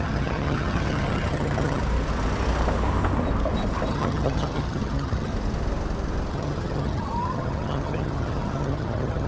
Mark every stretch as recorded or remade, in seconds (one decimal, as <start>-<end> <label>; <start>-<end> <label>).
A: 0.0-1.8 remade; 1.8-3.9 recorded; 3.9-5.3 remade; 5.3-6.3 recorded; 6.3-9.3 remade